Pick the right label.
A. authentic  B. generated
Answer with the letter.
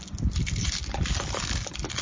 A